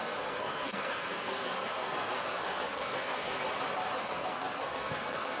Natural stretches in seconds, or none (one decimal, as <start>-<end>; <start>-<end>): 3.4-4.0